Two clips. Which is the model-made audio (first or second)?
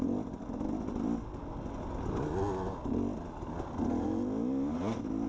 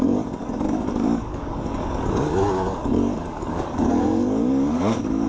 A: second